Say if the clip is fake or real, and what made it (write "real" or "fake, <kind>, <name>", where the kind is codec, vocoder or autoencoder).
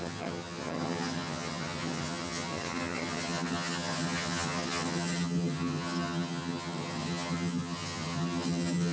fake, vocoder, HiFi-GAN